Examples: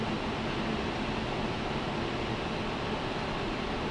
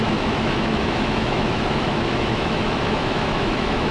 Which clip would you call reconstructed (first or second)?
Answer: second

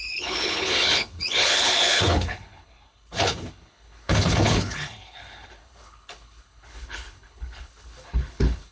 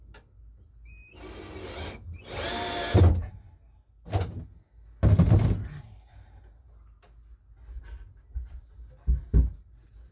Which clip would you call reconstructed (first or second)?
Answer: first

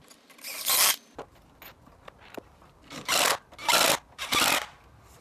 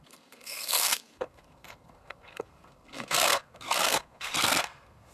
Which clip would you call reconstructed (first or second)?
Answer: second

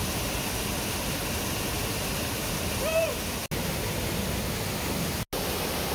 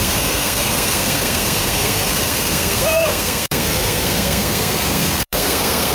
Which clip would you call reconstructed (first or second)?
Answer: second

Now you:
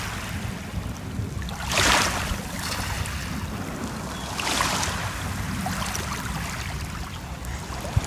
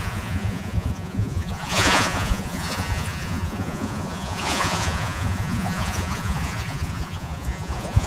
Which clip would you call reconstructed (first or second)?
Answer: second